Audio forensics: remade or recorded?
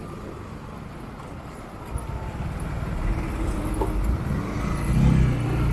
recorded